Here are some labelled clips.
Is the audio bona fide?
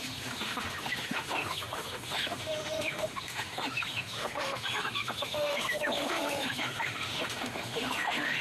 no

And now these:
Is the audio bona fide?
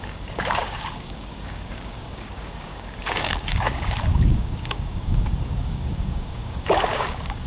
no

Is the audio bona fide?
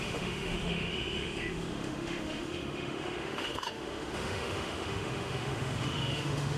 no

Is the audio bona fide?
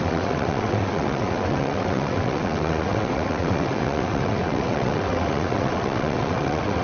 no